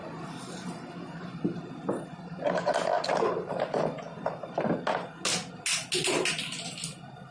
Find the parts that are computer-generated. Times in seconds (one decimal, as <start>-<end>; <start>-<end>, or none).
none